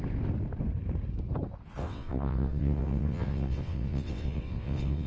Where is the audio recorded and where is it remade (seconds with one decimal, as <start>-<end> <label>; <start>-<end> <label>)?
0.0-1.8 recorded; 1.8-5.1 remade